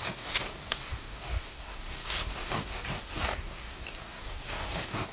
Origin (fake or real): fake